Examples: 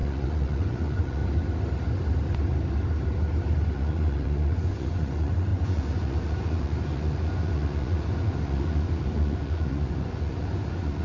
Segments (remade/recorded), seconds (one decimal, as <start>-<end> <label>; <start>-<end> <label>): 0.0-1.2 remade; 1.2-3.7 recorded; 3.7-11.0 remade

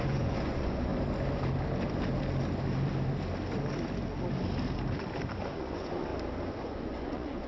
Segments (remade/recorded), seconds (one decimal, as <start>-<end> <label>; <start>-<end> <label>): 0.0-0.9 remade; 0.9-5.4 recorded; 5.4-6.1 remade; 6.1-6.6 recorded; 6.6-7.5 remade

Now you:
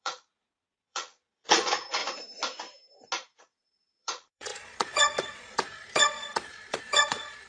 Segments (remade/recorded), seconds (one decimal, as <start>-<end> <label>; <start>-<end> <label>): 0.0-2.0 remade; 2.0-3.4 recorded; 3.4-7.5 remade

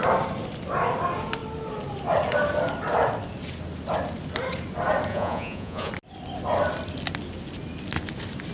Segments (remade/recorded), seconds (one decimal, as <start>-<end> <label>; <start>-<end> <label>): 0.0-5.1 recorded; 5.1-5.9 remade; 5.9-8.5 recorded

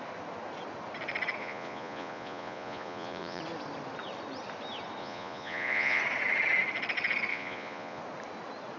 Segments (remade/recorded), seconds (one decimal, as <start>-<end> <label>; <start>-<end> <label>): 0.0-1.4 recorded; 1.4-3.4 remade; 3.4-5.0 recorded; 5.0-6.0 remade; 6.0-7.3 recorded; 7.3-8.0 remade; 8.0-8.8 recorded

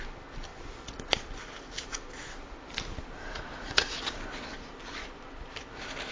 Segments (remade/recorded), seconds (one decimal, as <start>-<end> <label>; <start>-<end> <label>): 0.0-3.2 recorded; 3.2-4.0 remade; 4.0-6.1 recorded

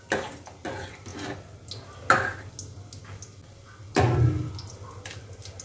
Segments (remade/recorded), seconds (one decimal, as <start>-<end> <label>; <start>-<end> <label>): 0.0-5.6 recorded

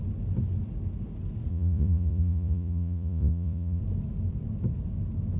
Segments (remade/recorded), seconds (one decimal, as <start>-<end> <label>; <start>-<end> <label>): 0.0-1.5 recorded; 1.5-3.8 remade; 3.8-5.4 recorded